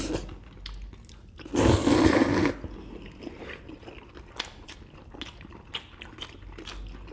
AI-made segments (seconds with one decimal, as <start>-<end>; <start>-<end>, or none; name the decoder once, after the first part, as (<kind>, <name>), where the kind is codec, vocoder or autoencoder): none